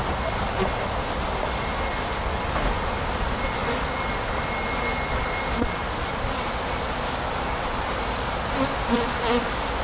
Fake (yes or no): no